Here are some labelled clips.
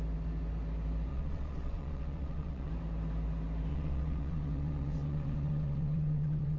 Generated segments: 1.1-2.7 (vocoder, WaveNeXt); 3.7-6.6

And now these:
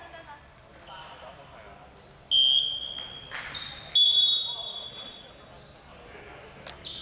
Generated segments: 4.7-5.3 (vocoder, WaveNeXt)

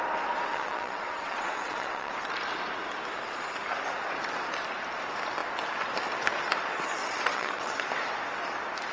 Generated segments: 0.5-2.1 (vocoder, WaveNeXt); 7.0-7.8

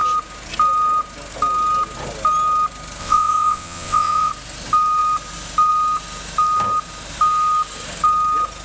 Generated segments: 3.0-4.3 (vocoder, WaveNeXt)

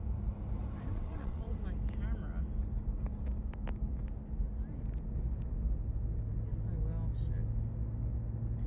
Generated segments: 0.9-1.5 (vocoder, WaveNeXt)

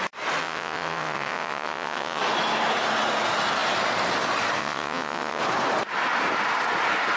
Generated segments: 0.4-2.2 (vocoder, WaveNeXt); 4.6-5.4

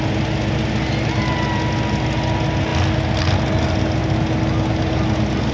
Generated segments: none

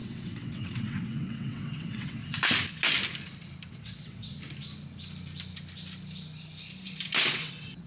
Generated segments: 0.0-2.2 (vocoder, WaveNeXt); 3.7-4.3; 7.2-7.9